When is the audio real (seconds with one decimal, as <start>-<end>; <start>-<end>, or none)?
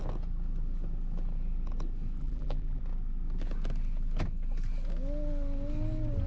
0.0-2.2; 2.8-6.3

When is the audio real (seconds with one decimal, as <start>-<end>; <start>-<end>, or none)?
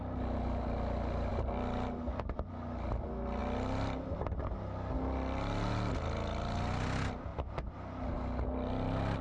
0.0-9.2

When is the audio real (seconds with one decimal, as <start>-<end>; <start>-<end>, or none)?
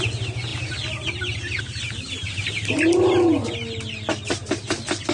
0.0-5.1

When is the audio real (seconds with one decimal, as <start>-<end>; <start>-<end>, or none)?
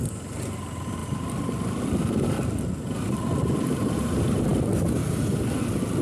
0.0-1.0; 3.9-6.0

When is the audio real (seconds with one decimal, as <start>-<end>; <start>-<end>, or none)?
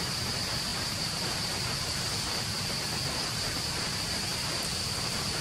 none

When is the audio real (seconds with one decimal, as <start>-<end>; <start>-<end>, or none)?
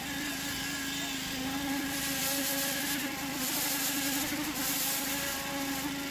0.0-1.8; 5.5-6.1